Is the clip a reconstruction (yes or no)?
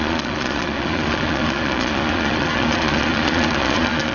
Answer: yes